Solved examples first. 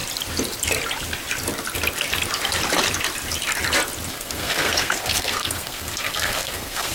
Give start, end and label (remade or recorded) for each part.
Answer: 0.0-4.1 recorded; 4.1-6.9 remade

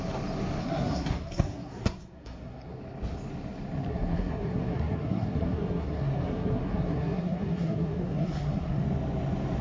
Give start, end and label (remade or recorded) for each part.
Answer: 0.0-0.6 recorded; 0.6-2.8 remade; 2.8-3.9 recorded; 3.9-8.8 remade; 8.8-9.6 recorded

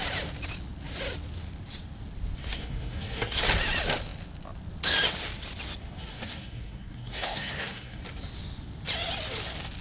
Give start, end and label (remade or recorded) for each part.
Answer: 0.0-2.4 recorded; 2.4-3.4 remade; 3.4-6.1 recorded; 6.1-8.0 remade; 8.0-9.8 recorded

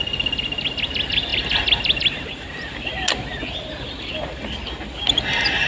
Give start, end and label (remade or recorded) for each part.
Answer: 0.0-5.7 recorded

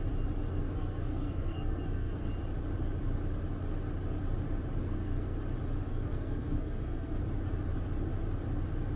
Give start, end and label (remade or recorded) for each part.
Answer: 0.0-0.5 recorded; 0.5-2.3 remade; 2.3-4.8 recorded; 4.8-5.4 remade; 5.4-5.9 recorded; 5.9-7.2 remade; 7.2-9.0 recorded